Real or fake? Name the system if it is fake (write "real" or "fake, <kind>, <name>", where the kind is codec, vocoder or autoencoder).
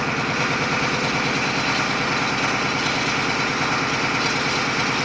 real